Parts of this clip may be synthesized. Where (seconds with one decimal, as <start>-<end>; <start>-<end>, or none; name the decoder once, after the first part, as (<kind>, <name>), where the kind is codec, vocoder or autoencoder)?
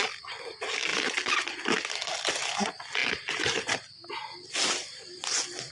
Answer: 0.9-1.6 (vocoder, BigVGAN v2); 3.0-3.6